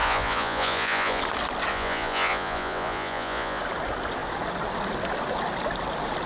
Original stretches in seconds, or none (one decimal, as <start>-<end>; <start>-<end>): 1.2-1.7; 3.6-6.3